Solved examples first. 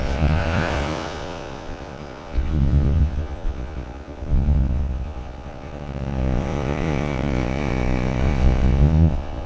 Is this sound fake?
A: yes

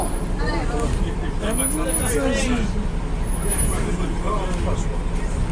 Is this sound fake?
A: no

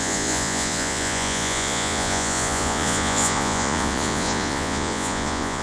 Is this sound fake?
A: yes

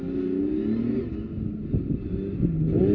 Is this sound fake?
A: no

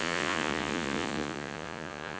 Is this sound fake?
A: yes